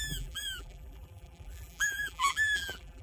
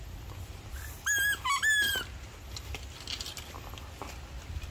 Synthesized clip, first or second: first